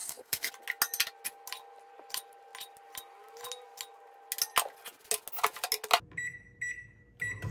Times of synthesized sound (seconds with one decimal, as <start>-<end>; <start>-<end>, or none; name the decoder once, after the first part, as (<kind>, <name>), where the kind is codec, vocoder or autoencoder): 0.0-0.5 (codec, SNAC)